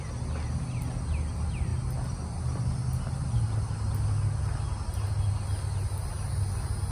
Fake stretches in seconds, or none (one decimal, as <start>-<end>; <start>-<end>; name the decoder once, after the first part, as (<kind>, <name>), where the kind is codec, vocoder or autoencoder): none

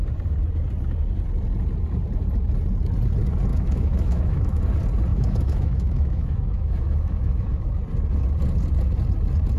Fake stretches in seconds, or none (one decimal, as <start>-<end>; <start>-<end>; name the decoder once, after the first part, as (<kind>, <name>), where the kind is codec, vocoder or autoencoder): 3.5-4.6 (autoencoder, DAC-VAE); 5.1-7.6

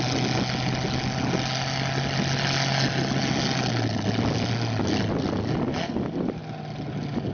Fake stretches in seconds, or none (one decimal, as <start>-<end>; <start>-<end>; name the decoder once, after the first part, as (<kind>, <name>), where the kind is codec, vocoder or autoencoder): none

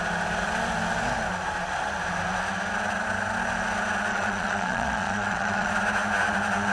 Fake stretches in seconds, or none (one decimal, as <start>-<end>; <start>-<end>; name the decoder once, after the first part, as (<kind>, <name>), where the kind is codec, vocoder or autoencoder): 4.1-5.7 (vocoder, Vocos)

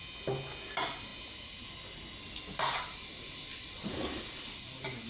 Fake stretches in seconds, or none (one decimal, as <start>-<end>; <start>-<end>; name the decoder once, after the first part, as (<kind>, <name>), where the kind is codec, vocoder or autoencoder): none